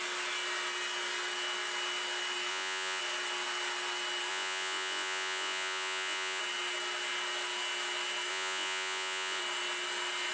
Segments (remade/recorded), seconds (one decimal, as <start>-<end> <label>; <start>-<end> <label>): 0.0-2.5 recorded; 2.5-3.0 remade; 3.0-4.3 recorded; 4.3-6.4 remade; 6.4-8.3 recorded; 8.3-9.4 remade; 9.4-10.3 recorded